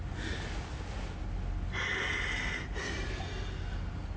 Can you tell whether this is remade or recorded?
recorded